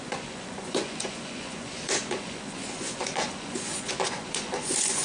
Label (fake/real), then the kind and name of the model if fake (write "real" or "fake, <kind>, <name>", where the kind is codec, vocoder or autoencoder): fake, vocoder, Vocos